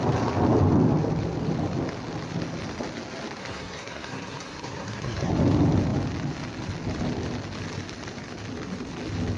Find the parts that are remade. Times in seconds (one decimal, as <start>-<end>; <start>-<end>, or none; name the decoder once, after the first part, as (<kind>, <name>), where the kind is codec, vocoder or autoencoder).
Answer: 3.4-5.3 (codec, SNAC)